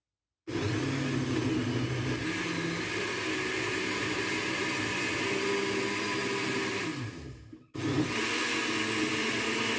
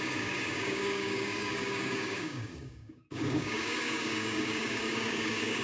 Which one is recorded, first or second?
first